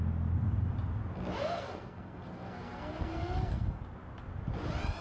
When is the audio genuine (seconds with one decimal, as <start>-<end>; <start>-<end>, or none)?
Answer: 0.0-1.4; 3.8-5.0